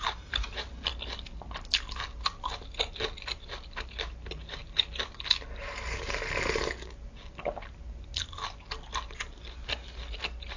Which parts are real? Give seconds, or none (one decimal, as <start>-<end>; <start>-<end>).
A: 0.0-10.6